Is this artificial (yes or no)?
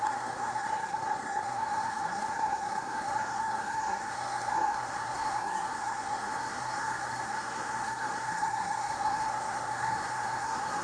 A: yes